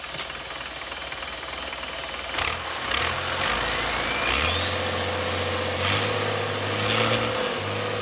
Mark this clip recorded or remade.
recorded